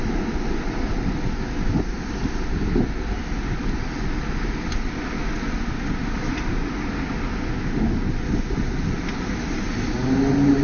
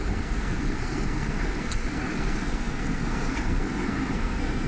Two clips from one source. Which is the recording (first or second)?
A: first